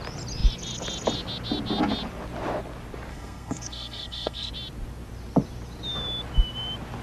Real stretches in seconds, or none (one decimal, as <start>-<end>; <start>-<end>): 0.0-3.1; 4.5-7.0